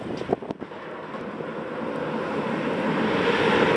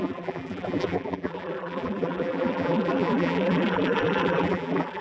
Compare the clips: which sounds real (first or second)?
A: first